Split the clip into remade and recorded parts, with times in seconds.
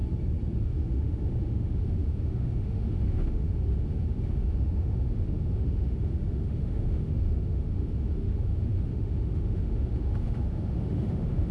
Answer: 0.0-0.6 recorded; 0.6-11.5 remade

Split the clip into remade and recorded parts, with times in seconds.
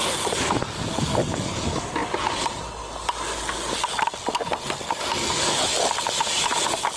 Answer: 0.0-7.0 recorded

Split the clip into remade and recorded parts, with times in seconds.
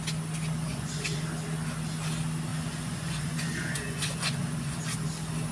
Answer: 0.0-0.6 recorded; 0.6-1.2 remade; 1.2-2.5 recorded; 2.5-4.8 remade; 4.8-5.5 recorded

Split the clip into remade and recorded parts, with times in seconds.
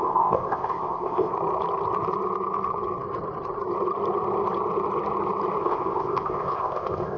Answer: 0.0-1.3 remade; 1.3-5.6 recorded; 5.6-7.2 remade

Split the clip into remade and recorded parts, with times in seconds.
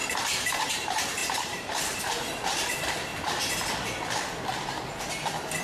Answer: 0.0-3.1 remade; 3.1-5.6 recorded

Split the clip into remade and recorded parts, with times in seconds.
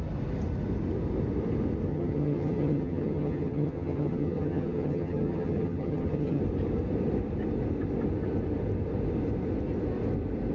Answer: 0.0-1.9 recorded; 1.9-6.4 remade; 6.4-10.5 recorded